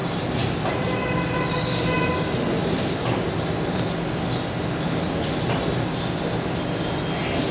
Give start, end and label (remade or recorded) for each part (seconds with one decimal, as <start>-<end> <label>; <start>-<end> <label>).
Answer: 0.0-7.5 recorded